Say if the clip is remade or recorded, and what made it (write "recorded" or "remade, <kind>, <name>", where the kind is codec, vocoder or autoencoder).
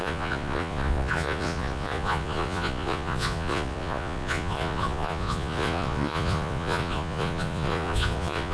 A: remade, vocoder, Vocos